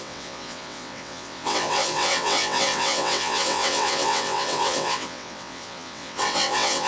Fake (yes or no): yes